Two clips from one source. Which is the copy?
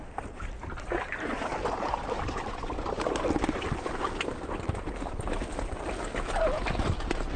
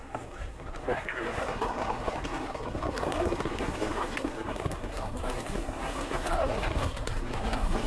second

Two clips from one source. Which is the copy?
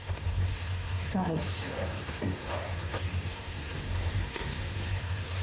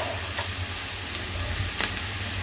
first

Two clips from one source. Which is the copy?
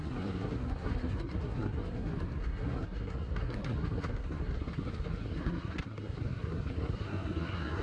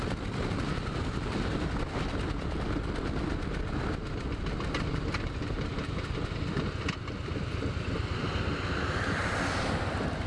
first